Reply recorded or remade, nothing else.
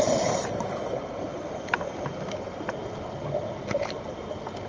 recorded